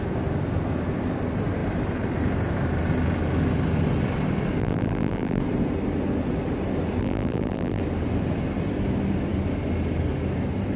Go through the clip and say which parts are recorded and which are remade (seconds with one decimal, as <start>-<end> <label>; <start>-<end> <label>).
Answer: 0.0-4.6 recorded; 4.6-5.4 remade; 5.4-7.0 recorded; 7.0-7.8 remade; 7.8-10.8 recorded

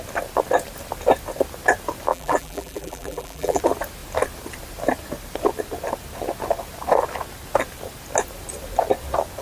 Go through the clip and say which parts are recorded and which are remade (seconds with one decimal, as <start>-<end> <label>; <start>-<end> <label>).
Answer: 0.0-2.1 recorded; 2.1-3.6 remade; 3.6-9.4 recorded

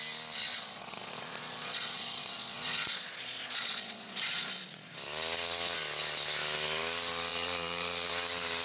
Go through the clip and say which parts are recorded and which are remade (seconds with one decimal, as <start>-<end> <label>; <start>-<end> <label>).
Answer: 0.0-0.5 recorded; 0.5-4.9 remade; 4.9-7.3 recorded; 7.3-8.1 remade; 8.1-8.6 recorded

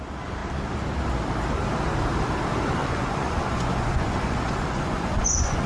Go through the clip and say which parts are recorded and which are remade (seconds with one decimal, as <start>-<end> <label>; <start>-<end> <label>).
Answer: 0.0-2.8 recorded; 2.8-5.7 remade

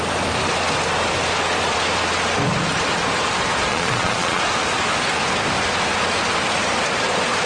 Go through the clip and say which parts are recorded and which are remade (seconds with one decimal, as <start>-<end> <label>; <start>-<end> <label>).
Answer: 0.0-3.7 recorded; 3.7-4.4 remade; 4.4-7.5 recorded

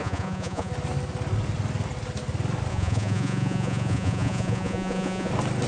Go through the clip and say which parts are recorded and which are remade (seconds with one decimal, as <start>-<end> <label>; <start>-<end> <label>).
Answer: 0.0-0.7 remade; 0.7-2.7 recorded; 2.7-5.3 remade; 5.3-5.7 recorded

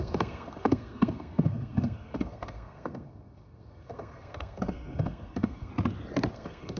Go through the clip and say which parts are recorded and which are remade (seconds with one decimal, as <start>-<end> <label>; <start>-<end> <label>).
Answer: 0.0-5.7 remade; 5.7-6.3 recorded; 6.3-6.8 remade